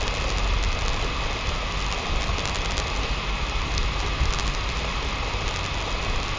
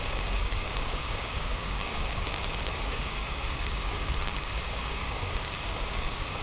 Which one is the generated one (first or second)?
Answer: second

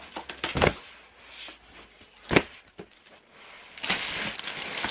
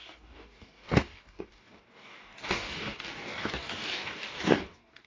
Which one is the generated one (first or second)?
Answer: second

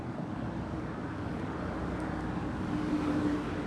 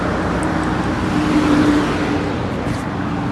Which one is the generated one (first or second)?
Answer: first